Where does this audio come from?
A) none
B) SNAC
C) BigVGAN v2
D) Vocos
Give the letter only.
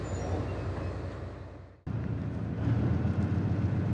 A